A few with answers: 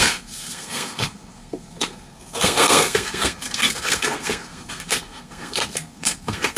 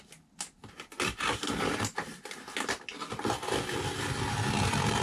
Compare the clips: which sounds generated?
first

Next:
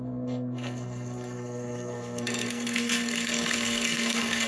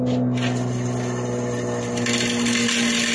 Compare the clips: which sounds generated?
first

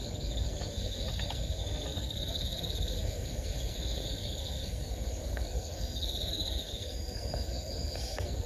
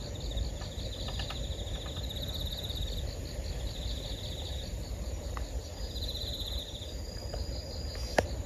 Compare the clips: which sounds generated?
first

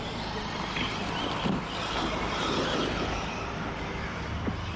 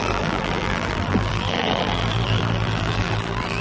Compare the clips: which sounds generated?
second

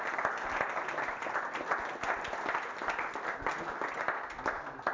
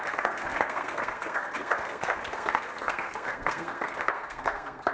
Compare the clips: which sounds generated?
second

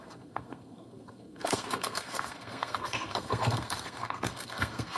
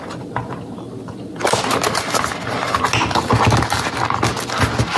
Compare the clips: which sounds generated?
first